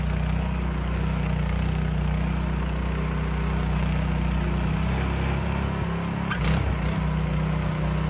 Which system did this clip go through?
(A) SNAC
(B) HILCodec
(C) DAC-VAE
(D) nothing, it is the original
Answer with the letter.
D